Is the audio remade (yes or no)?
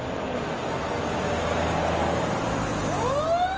no